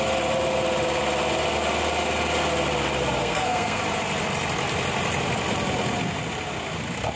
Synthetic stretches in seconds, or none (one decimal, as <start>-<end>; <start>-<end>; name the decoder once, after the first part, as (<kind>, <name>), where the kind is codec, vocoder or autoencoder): 3.2-3.8 (codec, SNAC)